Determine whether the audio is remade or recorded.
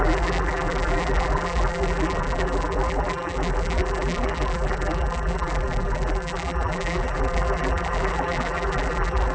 remade